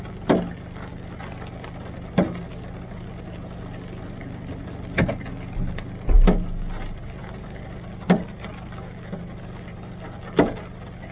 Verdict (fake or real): real